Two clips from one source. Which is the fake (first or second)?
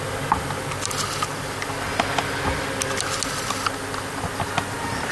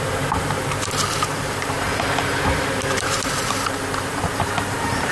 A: second